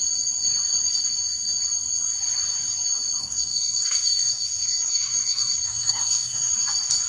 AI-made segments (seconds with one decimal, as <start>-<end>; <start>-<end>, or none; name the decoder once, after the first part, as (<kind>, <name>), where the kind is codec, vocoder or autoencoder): 3.2-6.5 (codec, SNAC)